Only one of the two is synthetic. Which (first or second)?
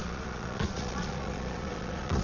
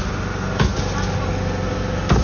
first